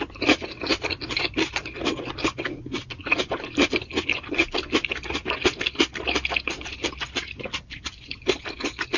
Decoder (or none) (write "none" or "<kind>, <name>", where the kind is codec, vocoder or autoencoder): none